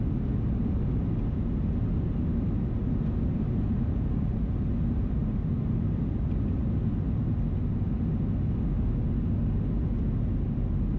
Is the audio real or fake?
real